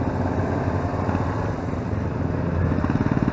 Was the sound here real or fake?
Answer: real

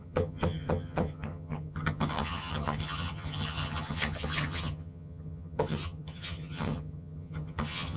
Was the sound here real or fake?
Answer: fake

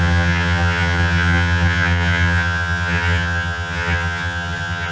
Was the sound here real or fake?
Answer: fake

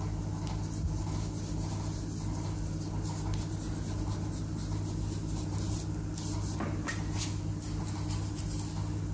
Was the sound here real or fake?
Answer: real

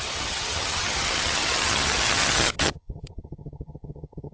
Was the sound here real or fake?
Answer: fake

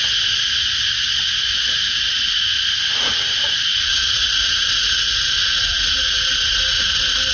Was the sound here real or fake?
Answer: real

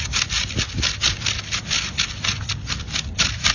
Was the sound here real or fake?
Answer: real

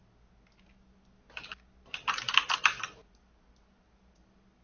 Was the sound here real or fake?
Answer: real